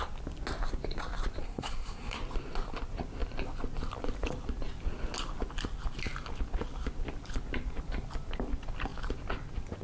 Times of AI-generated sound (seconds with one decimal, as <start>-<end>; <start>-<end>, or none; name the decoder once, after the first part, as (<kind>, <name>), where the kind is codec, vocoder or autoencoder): 1.4-2.2 (codec, SNAC)